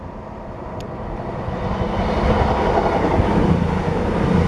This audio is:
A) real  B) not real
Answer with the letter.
A